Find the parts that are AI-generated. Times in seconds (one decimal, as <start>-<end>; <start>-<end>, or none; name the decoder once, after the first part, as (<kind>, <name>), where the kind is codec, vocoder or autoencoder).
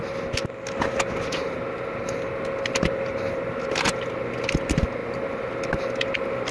none